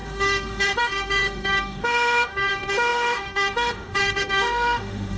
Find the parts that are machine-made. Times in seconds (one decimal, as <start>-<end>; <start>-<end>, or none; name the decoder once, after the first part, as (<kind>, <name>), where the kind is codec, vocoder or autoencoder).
0.0-5.2 (autoencoder, DAC-VAE)